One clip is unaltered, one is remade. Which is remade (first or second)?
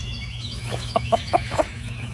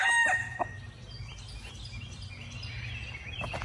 first